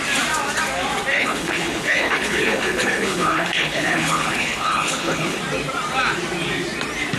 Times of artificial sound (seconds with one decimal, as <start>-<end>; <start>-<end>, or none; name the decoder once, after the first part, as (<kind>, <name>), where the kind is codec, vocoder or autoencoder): 1.1-5.4 (codec, HILCodec)